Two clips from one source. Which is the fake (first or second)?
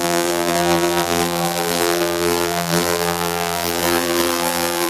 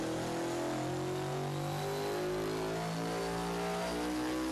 first